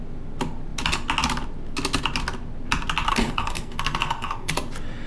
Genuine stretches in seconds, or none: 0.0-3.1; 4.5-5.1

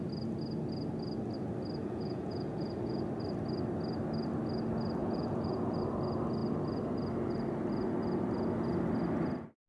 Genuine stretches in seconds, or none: 0.0-1.8; 3.0-5.0; 5.8-9.7

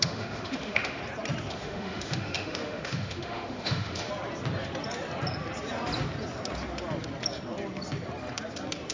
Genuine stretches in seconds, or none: 1.0-1.5; 4.1-8.9

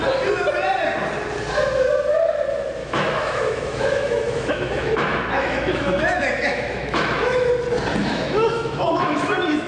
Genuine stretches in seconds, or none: 0.0-2.8; 7.5-8.0

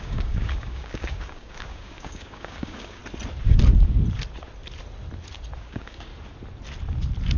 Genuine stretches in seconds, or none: 3.0-5.6; 6.1-7.4

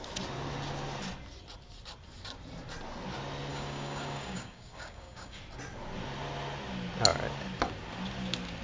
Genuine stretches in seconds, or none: 0.0-3.5; 5.4-8.6

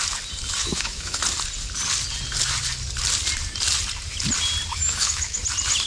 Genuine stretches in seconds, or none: 0.0-0.6; 1.2-4.7; 5.4-5.9

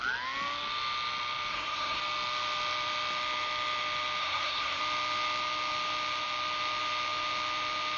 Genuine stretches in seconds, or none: 0.0-1.5; 2.0-4.2; 4.8-8.0